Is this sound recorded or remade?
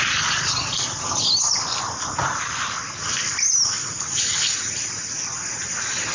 recorded